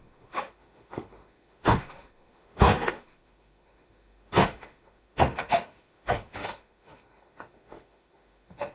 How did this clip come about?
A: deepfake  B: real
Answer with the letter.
A